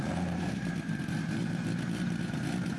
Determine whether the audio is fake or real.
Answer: fake